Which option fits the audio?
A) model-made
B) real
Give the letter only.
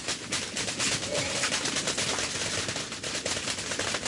B